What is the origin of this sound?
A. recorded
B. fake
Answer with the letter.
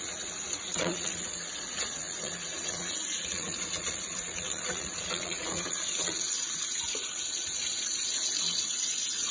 B